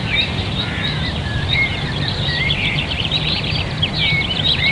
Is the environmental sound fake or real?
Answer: fake